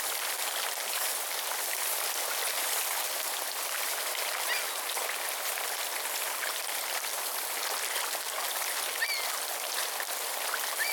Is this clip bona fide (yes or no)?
yes